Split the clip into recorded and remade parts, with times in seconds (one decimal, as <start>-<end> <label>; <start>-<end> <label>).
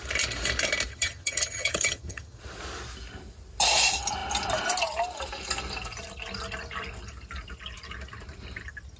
0.0-0.9 recorded; 0.9-2.4 remade; 2.4-9.0 recorded